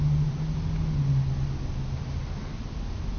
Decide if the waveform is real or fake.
real